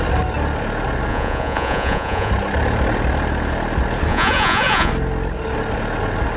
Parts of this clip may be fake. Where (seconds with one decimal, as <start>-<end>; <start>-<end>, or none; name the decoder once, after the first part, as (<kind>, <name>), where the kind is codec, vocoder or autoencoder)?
1.1-2.3 (vocoder, Vocos); 4.1-4.9